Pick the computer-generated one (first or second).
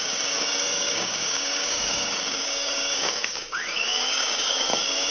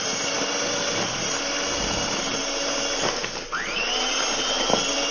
first